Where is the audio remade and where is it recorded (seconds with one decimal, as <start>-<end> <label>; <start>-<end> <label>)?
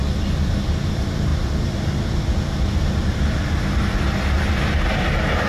0.0-5.5 recorded